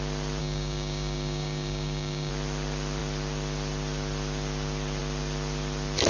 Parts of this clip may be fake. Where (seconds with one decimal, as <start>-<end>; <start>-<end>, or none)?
0.4-2.3